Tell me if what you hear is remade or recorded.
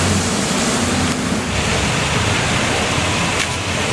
recorded